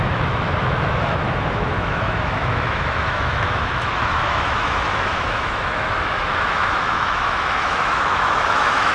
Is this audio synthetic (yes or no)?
yes